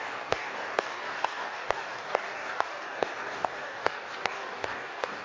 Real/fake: fake